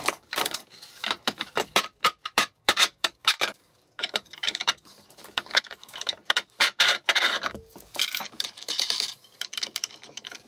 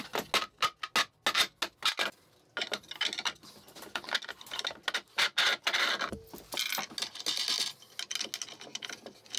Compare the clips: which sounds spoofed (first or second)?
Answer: first